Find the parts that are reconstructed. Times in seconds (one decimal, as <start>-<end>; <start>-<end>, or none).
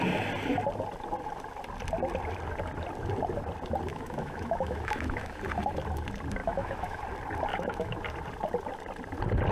3.9-5.4; 6.4-7.0; 7.5-8.0